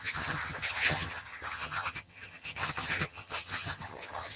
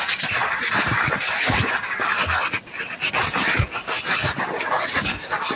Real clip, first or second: second